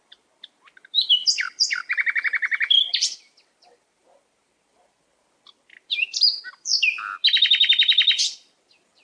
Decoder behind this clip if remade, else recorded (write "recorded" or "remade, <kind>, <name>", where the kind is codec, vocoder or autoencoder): remade, vocoder, BigVGAN v2